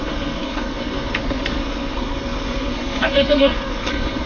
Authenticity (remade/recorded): remade